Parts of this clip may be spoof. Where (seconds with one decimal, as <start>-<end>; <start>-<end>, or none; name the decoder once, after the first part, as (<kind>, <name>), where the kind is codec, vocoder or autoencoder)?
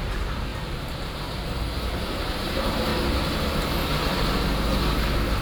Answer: 0.0-0.5 (vocoder, BigVGAN v2); 2.1-2.9